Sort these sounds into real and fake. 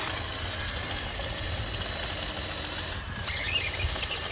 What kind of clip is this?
real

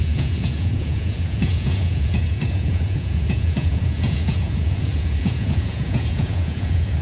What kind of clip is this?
fake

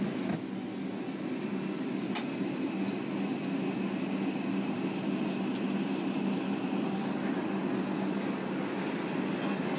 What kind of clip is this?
real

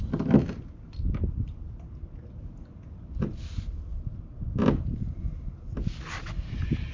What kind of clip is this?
real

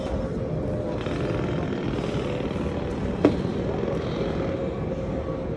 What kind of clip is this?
real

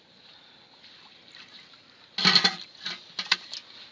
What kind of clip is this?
real